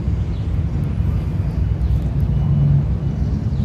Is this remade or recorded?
recorded